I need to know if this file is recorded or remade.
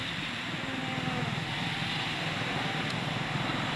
recorded